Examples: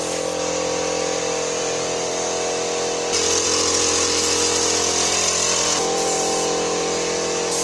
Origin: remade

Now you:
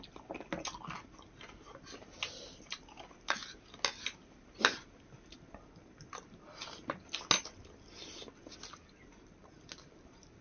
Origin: recorded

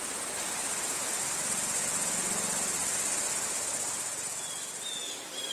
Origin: recorded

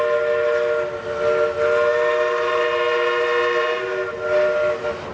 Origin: recorded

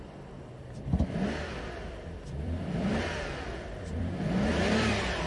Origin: remade